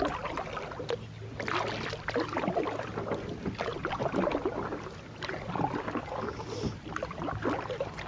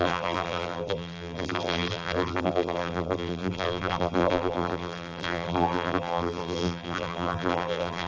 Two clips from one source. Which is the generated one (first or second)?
second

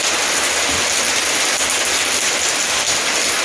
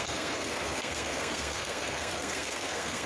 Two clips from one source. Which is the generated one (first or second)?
second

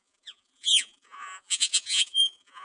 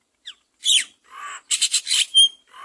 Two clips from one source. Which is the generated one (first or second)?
first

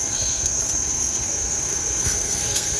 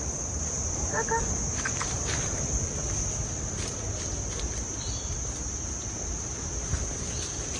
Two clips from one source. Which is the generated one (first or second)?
first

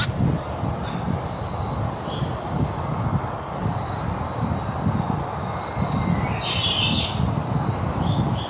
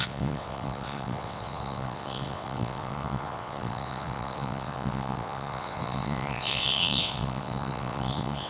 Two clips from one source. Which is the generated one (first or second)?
second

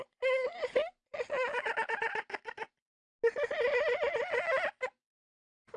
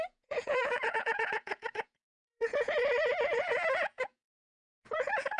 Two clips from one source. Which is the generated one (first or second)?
second